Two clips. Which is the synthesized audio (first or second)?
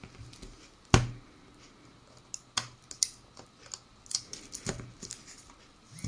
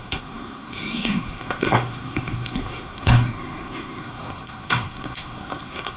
second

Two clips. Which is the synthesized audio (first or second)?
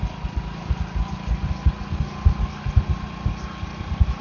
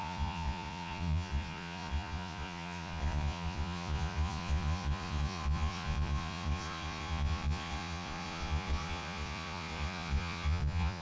second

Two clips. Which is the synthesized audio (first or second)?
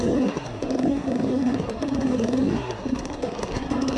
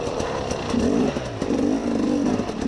first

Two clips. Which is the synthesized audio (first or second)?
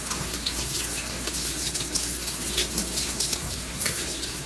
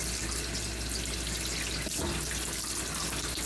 first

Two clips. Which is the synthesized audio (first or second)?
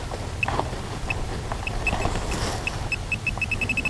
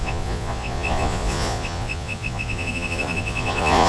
second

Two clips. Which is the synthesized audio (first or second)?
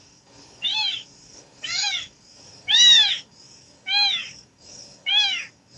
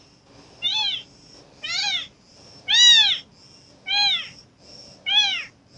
first